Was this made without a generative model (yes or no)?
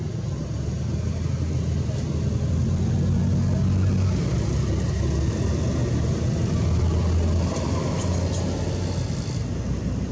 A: yes